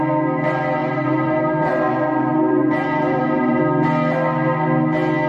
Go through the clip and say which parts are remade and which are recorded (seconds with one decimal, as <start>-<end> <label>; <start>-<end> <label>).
0.0-0.8 recorded; 0.8-3.6 remade; 3.6-5.3 recorded